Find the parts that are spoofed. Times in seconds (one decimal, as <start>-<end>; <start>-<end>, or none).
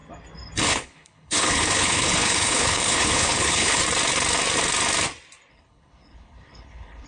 0.6-3.8; 5.5-7.1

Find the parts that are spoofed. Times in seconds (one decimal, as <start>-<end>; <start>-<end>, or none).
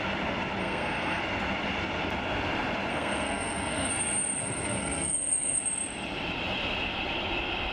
0.6-1.2; 2.9-3.9; 4.4-5.6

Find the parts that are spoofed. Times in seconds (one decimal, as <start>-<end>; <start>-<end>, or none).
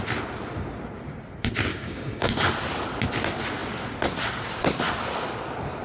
1.7-2.5